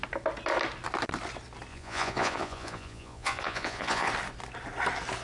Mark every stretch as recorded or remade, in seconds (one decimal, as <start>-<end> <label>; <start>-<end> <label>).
0.0-1.7 recorded; 1.7-4.1 remade; 4.1-5.2 recorded